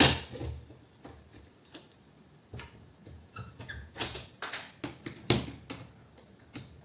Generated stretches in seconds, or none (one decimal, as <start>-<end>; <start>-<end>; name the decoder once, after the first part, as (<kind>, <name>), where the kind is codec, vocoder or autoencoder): 3.0-4.3 (vocoder, Vocos)

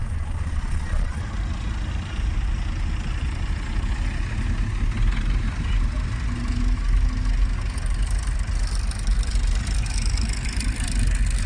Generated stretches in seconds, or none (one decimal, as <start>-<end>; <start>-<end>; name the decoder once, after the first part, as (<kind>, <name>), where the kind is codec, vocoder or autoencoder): 0.0-1.2 (vocoder, Vocos)

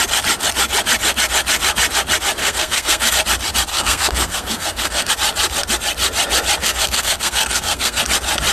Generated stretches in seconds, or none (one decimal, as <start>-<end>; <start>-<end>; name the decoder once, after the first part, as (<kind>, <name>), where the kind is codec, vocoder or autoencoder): 2.4-3.1 (codec, SNAC); 3.7-5.1; 6.6-8.0

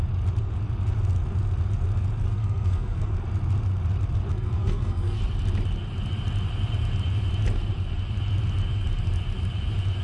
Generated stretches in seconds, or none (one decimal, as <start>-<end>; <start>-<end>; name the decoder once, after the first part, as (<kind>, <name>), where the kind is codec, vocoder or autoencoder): 2.3-3.1 (codec, SNAC); 4.3-5.2

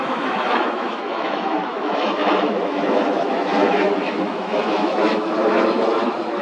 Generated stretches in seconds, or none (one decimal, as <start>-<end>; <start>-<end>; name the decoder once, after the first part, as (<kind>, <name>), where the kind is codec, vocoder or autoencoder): 0.0-6.4 (autoencoder, DAC-VAE)

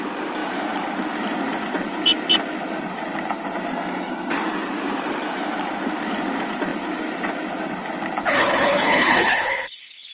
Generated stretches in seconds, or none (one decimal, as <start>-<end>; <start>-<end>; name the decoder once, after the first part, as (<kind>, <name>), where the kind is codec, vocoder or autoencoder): 8.3-10.1 (codec, HILCodec)

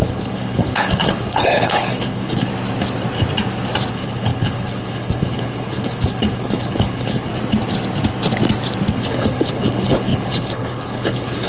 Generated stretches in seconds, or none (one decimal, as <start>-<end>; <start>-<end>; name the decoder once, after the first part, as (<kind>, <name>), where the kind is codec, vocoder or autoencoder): 0.0-2.5 (codec, HILCodec); 3.9-7.3; 8.9-11.5